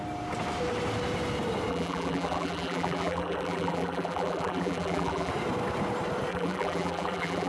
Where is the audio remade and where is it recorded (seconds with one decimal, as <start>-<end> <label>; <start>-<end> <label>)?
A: 0.0-1.7 recorded; 1.7-5.3 remade; 5.3-6.3 recorded; 6.3-7.5 remade